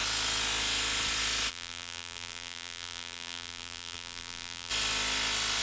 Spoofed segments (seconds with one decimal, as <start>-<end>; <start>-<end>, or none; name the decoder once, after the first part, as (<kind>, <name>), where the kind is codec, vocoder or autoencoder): 1.5-4.7 (vocoder, BigVGAN v2)